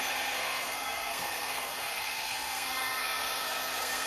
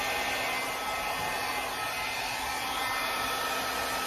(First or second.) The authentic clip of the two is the second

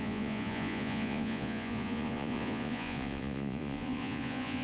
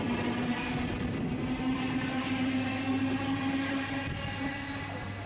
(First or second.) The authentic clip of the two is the second